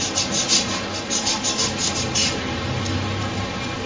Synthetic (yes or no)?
no